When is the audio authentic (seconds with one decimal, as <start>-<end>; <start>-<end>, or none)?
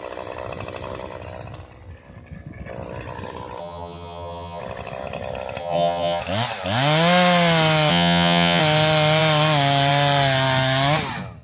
0.0-3.6; 4.6-5.6; 6.2-7.9; 8.6-11.4